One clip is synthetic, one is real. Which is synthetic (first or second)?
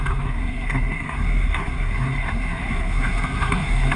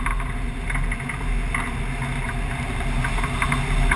first